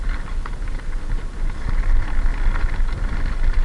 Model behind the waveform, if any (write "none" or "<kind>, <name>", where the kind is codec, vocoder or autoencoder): none